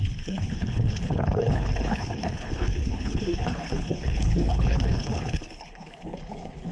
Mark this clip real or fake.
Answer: fake